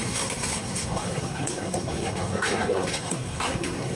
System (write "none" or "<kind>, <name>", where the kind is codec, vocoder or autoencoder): codec, SNAC